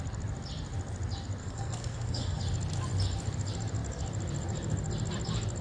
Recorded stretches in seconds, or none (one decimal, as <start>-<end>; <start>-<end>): 0.0-1.4; 2.4-5.6